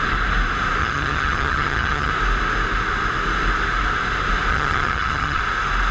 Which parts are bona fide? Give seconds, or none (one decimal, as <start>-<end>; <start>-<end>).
0.0-0.8; 2.1-4.5; 5.4-5.9